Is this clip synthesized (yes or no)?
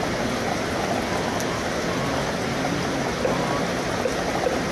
no